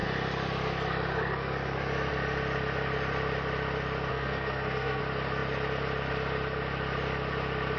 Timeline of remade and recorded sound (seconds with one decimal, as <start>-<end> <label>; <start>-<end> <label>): 0.0-4.1 recorded; 4.1-5.0 remade; 5.0-7.8 recorded